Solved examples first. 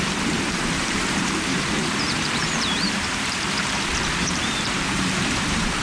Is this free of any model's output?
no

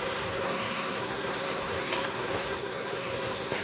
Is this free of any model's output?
no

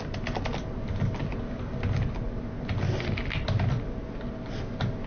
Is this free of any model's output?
yes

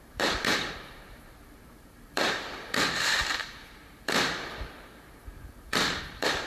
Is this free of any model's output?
no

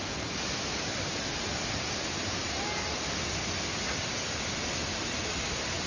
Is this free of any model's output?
yes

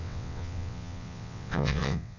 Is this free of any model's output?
no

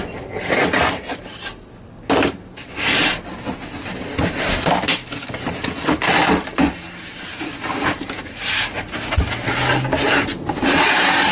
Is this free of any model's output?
yes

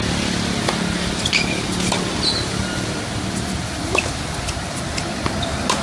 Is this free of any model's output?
yes